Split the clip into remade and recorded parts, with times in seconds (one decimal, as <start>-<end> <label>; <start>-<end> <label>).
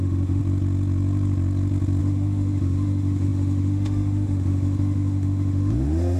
0.0-0.4 remade; 0.4-2.0 recorded; 2.0-6.2 remade